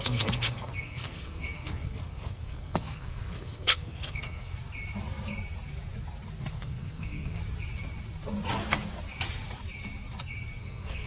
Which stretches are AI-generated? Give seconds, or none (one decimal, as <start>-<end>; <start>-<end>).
0.0-4.5; 6.5-7.4; 10.6-11.1